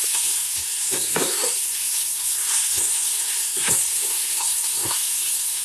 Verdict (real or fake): fake